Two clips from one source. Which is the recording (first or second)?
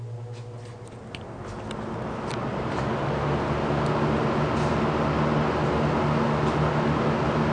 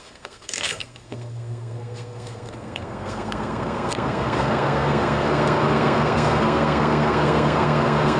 first